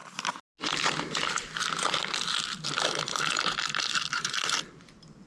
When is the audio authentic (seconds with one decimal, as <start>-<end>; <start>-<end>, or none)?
0.0-5.3